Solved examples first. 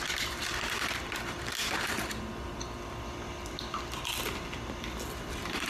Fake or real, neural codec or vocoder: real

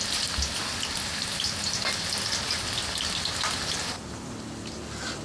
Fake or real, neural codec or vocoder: real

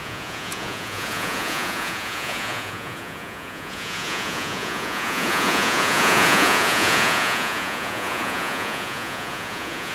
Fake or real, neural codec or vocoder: fake, vocoder, Vocos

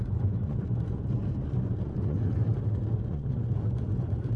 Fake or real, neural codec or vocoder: fake, vocoder, Vocos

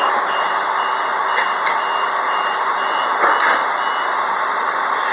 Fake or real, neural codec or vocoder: real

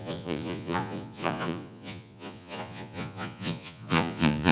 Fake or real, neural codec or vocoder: fake, vocoder, Vocos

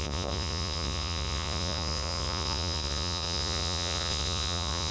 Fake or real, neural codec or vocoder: fake, vocoder, Vocos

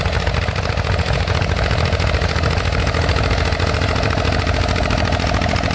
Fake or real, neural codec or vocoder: real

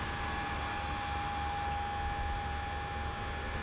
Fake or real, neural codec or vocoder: real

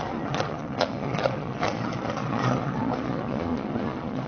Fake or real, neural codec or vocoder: fake, vocoder, Vocos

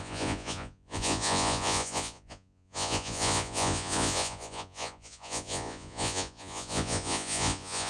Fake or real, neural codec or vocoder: fake, vocoder, Vocos